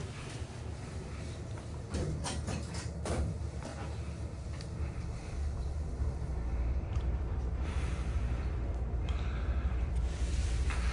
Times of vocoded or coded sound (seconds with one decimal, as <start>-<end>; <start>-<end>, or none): 0.0-3.7; 4.3-10.9